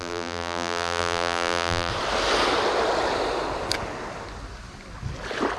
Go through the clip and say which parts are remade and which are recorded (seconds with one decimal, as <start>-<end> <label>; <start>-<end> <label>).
0.0-1.9 remade; 1.9-5.6 recorded